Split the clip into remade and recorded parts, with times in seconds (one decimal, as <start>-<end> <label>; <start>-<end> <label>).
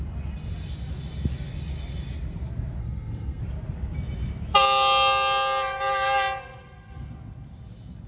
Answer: 0.0-2.8 recorded; 2.8-3.4 remade; 3.4-8.1 recorded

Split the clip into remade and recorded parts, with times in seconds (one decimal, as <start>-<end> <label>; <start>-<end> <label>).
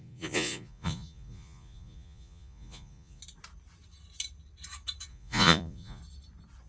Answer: 0.0-3.2 remade; 3.2-5.1 recorded; 5.1-6.0 remade; 6.0-6.7 recorded